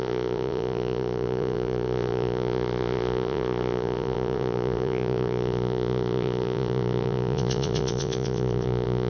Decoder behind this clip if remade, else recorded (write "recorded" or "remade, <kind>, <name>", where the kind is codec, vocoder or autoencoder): remade, vocoder, Vocos